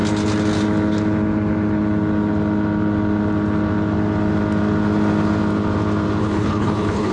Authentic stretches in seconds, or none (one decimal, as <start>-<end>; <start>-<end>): 0.0-6.2